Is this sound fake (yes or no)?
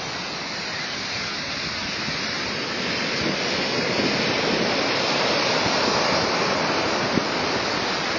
no